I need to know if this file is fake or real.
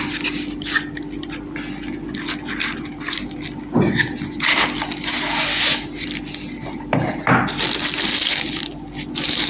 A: real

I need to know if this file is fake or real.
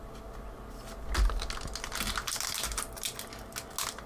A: real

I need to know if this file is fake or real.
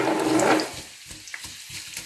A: real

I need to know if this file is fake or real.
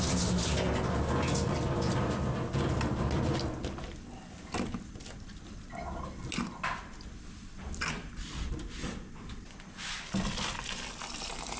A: real